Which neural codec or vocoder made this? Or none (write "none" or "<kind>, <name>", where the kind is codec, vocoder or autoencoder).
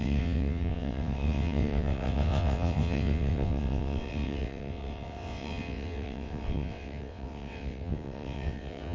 vocoder, WaveNeXt